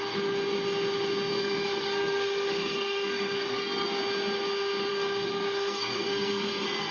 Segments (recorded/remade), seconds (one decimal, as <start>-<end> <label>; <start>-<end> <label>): 0.0-1.3 recorded; 1.3-4.0 remade; 4.0-4.9 recorded; 4.9-6.9 remade